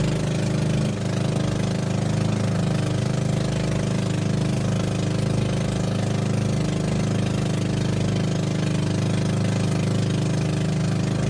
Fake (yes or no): no